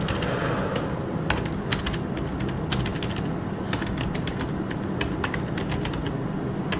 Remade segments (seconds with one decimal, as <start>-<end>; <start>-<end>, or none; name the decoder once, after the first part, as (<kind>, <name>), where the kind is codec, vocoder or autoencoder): none